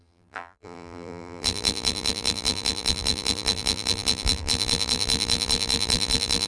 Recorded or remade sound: remade